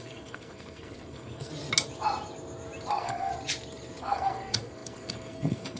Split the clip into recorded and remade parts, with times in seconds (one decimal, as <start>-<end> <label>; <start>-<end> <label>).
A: 0.0-1.5 remade; 1.5-2.9 recorded; 2.9-3.3 remade; 3.3-4.0 recorded; 4.0-5.8 remade